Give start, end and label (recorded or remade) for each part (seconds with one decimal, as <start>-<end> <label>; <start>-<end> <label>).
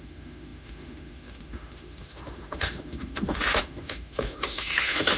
0.0-5.2 remade